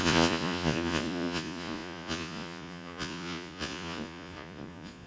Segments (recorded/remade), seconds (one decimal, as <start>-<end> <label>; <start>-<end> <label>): 0.0-5.1 remade